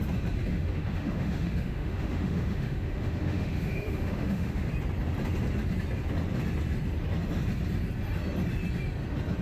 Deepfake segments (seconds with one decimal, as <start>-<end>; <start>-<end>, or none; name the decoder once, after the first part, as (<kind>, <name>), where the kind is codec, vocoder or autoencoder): 0.5-4.7 (autoencoder, DAC-VAE)